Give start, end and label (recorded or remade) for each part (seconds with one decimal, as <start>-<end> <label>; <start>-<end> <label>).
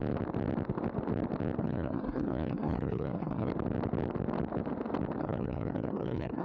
0.0-1.6 recorded; 1.6-3.5 remade; 3.5-5.2 recorded; 5.2-6.4 remade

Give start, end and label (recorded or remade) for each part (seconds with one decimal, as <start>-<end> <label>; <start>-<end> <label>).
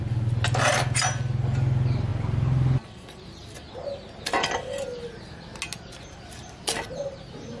0.0-7.6 recorded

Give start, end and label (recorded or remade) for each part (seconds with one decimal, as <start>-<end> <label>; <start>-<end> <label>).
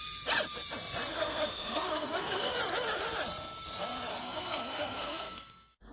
0.0-1.1 recorded; 1.1-2.5 remade; 2.5-4.1 recorded; 4.1-5.9 remade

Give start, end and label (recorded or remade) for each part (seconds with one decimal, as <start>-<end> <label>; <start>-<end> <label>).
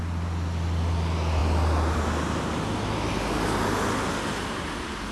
0.0-5.1 recorded